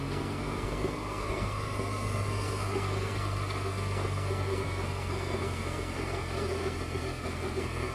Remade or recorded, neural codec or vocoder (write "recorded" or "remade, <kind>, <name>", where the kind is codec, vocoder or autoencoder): remade, codec, SNAC